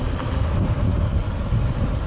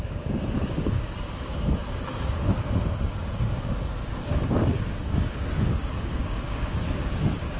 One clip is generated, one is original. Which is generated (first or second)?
second